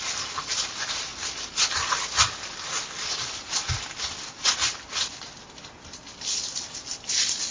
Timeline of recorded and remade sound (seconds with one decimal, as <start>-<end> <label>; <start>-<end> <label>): 0.0-7.5 recorded